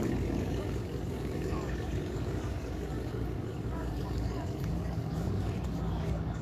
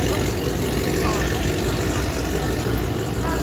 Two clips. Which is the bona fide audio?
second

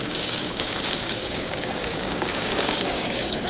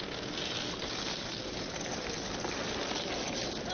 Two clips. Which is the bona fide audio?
second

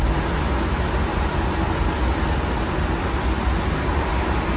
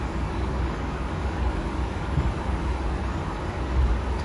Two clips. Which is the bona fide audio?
first